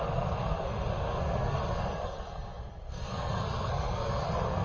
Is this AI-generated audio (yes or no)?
yes